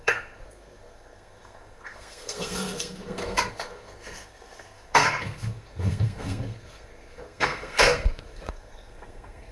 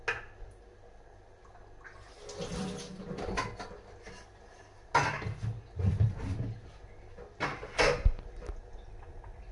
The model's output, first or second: first